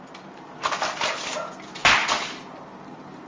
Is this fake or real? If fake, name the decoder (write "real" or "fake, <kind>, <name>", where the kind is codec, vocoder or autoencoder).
real